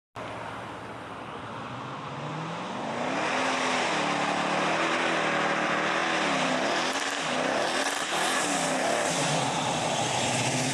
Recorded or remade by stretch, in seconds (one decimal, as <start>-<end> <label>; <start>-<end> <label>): 0.0-1.1 recorded; 1.1-2.3 remade; 2.3-4.9 recorded; 4.9-10.7 remade